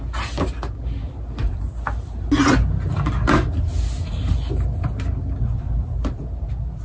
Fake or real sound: real